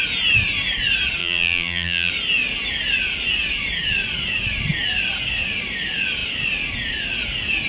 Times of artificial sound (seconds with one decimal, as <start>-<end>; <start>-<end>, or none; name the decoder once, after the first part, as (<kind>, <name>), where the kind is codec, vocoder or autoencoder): 1.2-2.1 (vocoder, BigVGAN v2)